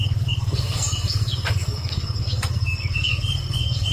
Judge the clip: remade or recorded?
remade